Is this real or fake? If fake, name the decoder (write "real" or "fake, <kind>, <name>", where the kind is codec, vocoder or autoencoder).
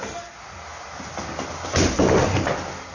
real